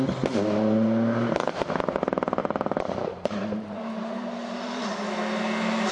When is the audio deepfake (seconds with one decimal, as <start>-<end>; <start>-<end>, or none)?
2.4-4.7